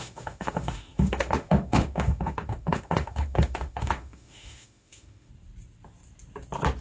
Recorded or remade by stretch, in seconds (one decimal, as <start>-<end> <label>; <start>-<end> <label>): 0.0-5.3 remade; 5.3-6.8 recorded